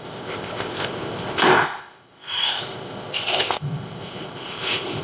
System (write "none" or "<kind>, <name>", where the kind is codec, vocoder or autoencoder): codec, ZipCodec